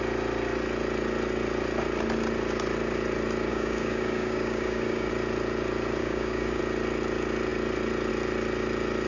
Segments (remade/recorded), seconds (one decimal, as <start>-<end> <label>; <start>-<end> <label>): 0.0-3.5 recorded; 3.5-5.1 remade; 5.1-6.0 recorded; 6.0-6.6 remade; 6.6-9.1 recorded